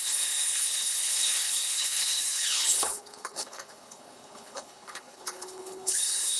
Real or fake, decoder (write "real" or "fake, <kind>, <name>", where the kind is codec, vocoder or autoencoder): fake, codec, HILCodec